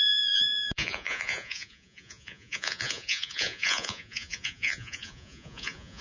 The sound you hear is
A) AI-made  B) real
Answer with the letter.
A